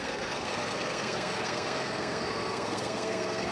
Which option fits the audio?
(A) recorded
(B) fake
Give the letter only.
B